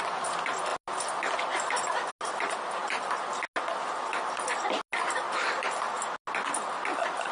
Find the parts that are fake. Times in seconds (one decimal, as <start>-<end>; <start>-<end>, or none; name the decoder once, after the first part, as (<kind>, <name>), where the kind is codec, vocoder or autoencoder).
none